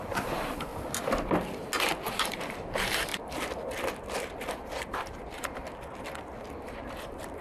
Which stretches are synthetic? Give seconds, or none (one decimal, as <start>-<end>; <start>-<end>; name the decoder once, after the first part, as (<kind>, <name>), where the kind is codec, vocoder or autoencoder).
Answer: 0.0-0.7 (vocoder, BigVGAN v2); 1.8-3.1; 4.5-5.6; 6.6-7.4